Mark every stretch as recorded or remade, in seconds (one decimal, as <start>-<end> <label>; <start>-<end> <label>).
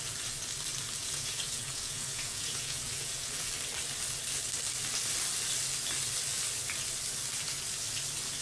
0.0-1.0 recorded; 1.0-3.5 remade; 3.5-8.4 recorded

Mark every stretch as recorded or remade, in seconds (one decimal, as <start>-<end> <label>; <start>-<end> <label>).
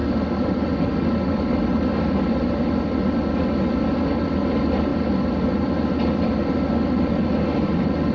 0.0-8.1 recorded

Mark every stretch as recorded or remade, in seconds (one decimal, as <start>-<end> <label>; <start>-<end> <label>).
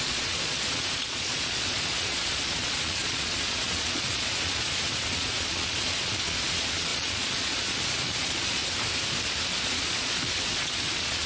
0.0-8.6 remade; 8.6-9.5 recorded; 9.5-11.3 remade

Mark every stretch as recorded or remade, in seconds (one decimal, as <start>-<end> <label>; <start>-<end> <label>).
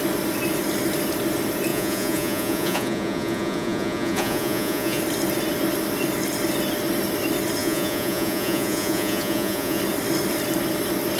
0.0-1.7 recorded; 1.7-5.0 remade; 5.0-7.6 recorded; 7.6-9.8 remade; 9.8-11.2 recorded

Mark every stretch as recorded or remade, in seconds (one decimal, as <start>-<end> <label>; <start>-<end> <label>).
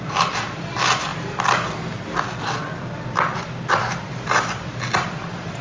0.0-5.6 recorded